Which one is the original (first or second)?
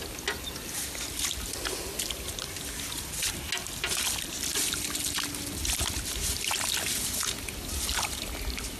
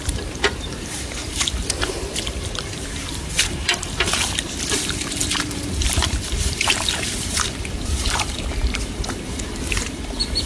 first